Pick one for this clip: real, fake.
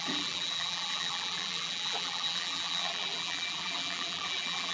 fake